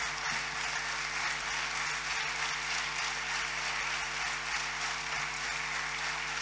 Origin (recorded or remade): recorded